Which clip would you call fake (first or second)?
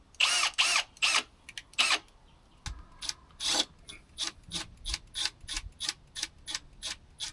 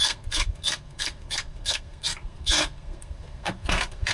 second